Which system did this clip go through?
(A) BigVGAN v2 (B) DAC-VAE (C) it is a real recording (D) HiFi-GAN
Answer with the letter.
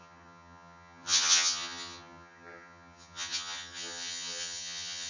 D